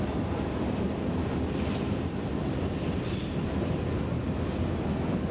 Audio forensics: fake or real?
real